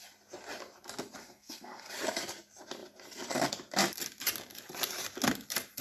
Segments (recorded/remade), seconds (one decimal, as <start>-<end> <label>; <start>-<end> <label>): 0.0-1.2 recorded; 1.2-1.9 remade; 1.9-5.8 recorded